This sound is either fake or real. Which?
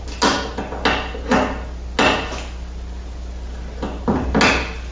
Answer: real